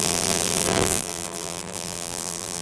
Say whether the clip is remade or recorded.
remade